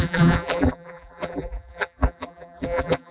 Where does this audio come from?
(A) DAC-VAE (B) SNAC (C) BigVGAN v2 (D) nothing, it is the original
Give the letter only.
C